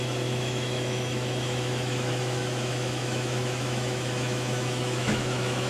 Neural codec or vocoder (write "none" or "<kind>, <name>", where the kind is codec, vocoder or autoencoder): autoencoder, DAC-VAE